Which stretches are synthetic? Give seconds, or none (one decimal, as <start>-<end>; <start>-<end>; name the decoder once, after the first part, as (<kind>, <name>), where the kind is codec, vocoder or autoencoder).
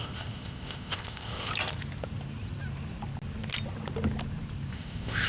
0.0-1.5 (codec, ZipCodec); 4.7-5.3